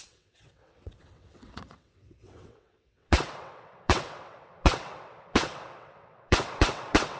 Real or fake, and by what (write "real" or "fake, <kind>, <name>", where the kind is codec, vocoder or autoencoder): fake, vocoder, WaveNeXt